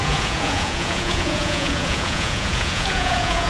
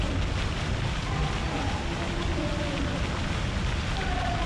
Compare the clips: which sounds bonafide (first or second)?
second